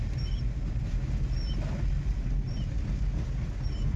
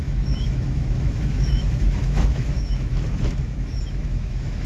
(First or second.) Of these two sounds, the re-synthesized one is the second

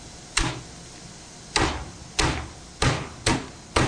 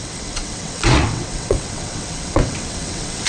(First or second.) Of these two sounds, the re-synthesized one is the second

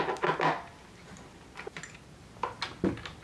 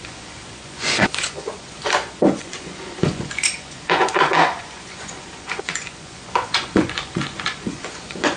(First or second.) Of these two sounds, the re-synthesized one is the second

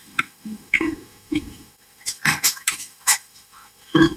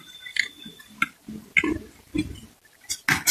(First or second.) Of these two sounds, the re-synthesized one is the first